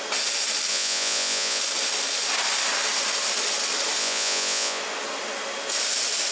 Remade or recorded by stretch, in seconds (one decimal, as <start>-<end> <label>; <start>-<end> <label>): 0.0-0.7 recorded; 0.7-1.6 remade; 1.6-4.0 recorded; 4.0-4.8 remade; 4.8-6.3 recorded